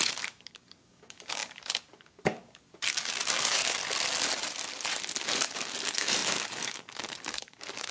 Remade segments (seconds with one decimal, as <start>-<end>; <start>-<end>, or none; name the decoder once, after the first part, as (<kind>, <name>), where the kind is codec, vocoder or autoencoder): 0.0-3.8 (codec, DAC); 5.2-7.9